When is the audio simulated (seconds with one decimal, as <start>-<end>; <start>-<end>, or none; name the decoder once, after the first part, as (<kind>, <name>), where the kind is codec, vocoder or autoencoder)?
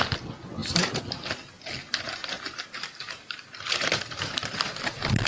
0.6-1.2 (vocoder, BigVGAN v2); 1.8-4.8